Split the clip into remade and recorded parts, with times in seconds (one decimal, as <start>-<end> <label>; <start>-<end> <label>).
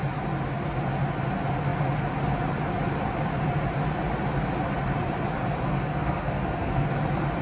0.0-5.7 recorded; 5.7-6.9 remade; 6.9-7.4 recorded